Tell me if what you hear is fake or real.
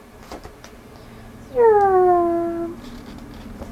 real